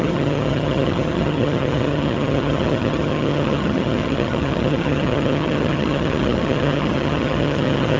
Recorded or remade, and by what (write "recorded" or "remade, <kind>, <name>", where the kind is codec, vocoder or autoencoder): remade, vocoder, HiFi-GAN